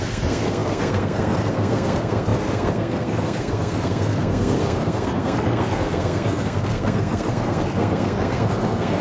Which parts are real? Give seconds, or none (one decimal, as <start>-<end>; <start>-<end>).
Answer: none